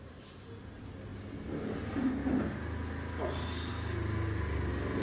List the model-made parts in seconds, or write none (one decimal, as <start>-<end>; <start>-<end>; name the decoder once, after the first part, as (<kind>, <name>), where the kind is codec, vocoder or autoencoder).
none